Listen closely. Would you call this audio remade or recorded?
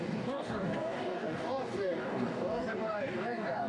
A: remade